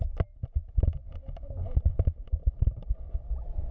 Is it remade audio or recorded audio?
recorded